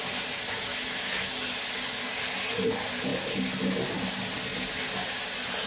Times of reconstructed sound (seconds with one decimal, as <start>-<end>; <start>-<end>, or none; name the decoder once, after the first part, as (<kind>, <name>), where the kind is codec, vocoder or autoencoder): 0.7-1.3 (autoencoder, DAC-VAE)